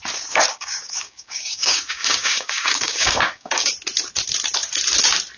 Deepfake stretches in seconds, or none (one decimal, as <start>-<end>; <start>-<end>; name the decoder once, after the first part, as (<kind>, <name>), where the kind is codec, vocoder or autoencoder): 0.5-3.7 (codec, DAC)

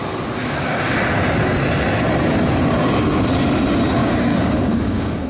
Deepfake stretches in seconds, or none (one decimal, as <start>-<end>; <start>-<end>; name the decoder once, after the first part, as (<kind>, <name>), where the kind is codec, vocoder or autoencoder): 0.4-0.9 (codec, DAC); 4.0-5.3

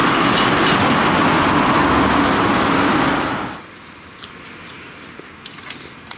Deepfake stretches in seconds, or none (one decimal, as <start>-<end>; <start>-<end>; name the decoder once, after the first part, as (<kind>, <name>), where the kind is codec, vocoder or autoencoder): none

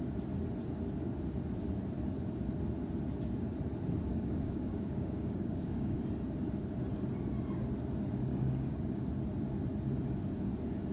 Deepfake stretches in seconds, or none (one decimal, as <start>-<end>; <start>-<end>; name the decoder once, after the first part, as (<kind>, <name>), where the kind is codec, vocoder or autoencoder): 4.1-6.0 (codec, DAC); 8.3-9.0

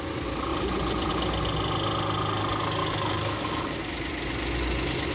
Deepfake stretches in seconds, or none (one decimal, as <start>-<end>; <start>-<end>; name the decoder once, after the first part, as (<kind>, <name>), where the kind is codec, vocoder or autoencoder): 2.8-3.8 (codec, DAC)